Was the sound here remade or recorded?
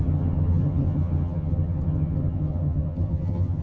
remade